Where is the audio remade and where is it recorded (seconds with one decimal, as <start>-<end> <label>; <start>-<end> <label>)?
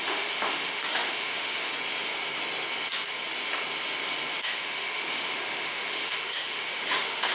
0.0-1.7 remade; 1.7-4.4 recorded; 4.4-7.3 remade